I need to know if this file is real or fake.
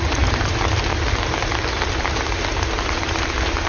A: fake